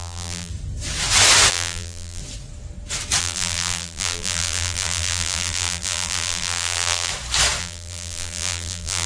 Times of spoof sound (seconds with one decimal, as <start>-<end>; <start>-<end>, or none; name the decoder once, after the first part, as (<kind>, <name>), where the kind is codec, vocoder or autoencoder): 0.0-0.5 (vocoder, BigVGAN v2); 1.5-2.2; 3.2-7.1; 7.6-9.1